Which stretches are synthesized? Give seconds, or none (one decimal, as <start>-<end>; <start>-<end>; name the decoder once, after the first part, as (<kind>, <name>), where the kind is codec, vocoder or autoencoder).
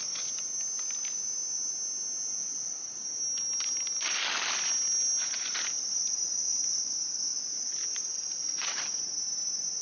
2.4-3.2 (vocoder, Vocos); 7.3-9.0